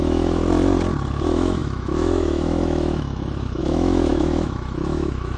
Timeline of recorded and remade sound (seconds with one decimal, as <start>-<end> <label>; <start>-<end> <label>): 0.0-0.4 remade; 0.4-1.1 recorded; 1.1-5.4 remade